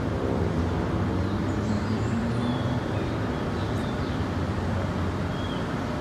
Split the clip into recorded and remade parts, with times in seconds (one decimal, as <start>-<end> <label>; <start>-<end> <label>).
0.0-1.4 recorded; 1.4-2.8 remade; 2.8-6.0 recorded